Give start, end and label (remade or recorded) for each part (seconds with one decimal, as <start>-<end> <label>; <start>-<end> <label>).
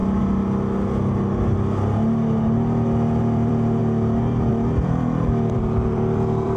0.0-3.2 recorded; 3.2-3.8 remade; 3.8-4.5 recorded; 4.5-6.6 remade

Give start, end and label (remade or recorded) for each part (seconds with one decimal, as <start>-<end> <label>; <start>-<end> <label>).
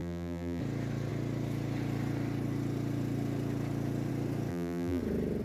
0.0-0.6 remade; 0.6-4.5 recorded; 4.5-5.0 remade; 5.0-5.4 recorded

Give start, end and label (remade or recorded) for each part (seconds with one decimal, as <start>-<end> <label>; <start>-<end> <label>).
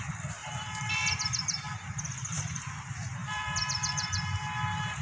0.0-0.4 recorded; 0.4-2.7 remade; 2.7-3.2 recorded; 3.2-4.2 remade; 4.2-5.0 recorded